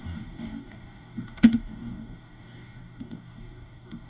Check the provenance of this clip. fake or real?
fake